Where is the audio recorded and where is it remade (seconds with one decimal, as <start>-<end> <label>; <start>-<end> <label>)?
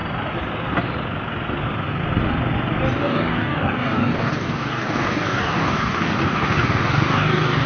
0.0-3.0 recorded; 3.0-7.7 remade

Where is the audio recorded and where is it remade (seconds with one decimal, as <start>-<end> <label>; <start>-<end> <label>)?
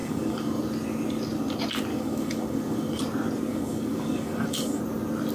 0.0-0.6 remade; 0.6-1.9 recorded; 1.9-3.0 remade; 3.0-3.5 recorded; 3.5-4.8 remade; 4.8-5.3 recorded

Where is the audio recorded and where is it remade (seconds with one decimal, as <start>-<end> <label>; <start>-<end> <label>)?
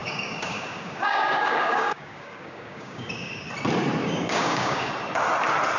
0.0-3.5 remade; 3.5-4.0 recorded; 4.0-4.9 remade; 4.9-5.8 recorded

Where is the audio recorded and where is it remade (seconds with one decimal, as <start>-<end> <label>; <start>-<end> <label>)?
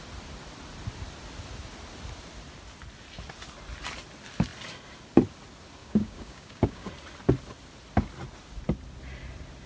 0.0-5.8 recorded; 5.8-6.9 remade; 6.9-9.7 recorded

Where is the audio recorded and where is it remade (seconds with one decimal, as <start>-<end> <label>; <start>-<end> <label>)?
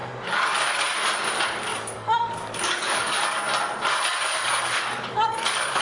0.0-0.8 remade; 0.8-1.7 recorded; 1.7-3.2 remade; 3.2-4.3 recorded; 4.3-5.8 remade